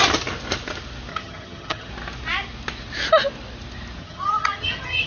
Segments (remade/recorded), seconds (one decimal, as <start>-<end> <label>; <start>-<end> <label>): 0.0-1.1 recorded; 1.1-1.9 remade; 1.9-4.0 recorded; 4.0-5.1 remade